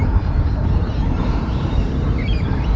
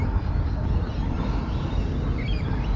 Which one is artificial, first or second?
first